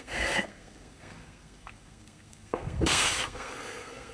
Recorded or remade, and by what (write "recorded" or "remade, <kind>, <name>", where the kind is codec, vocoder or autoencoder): remade, codec, SNAC